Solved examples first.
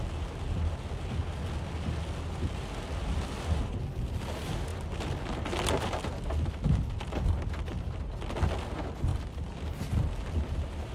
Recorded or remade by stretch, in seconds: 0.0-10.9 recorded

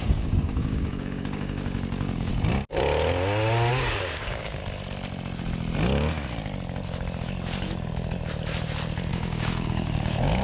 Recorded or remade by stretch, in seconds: 0.0-2.3 remade; 2.3-3.7 recorded; 3.7-4.6 remade; 4.6-9.1 recorded; 9.1-10.4 remade

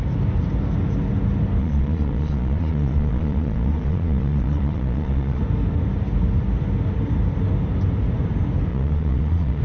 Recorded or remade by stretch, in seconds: 0.0-1.6 recorded; 1.6-5.4 remade; 5.4-8.7 recorded; 8.7-9.6 remade